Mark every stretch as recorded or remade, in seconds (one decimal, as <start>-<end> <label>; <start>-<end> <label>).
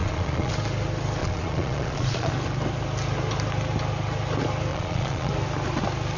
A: 0.0-0.5 remade; 0.5-1.2 recorded; 1.2-2.3 remade; 2.3-4.7 recorded; 4.7-5.3 remade; 5.3-6.2 recorded